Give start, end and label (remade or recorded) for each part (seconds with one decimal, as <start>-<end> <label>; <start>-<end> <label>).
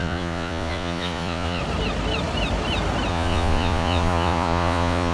0.0-1.6 remade; 1.6-3.1 recorded; 3.1-5.1 remade